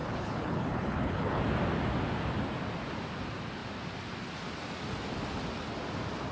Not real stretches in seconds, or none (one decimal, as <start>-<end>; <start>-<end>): 0.0-1.4